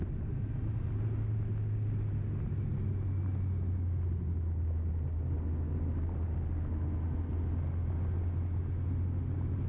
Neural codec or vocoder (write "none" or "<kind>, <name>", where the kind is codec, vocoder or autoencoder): none